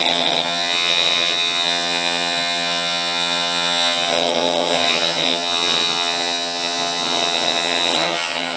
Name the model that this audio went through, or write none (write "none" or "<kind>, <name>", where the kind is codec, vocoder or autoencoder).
vocoder, HiFi-GAN